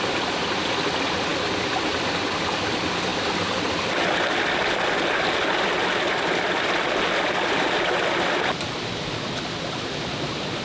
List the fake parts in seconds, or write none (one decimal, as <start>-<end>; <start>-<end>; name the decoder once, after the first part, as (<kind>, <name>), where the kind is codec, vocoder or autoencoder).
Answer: none